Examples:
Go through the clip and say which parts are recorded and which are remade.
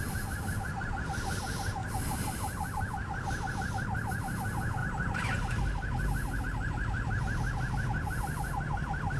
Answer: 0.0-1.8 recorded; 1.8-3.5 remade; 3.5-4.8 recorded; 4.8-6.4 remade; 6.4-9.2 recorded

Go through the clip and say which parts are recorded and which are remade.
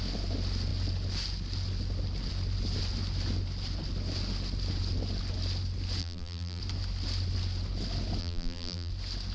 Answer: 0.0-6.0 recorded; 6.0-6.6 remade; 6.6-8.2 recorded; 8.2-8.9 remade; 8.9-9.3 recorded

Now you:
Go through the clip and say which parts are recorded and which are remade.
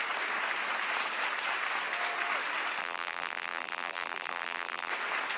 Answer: 0.0-2.8 recorded; 2.8-4.9 remade; 4.9-5.4 recorded